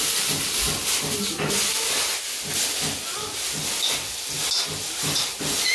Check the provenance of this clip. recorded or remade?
recorded